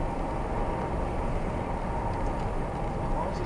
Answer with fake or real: fake